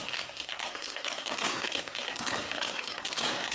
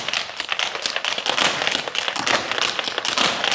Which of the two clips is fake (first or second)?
first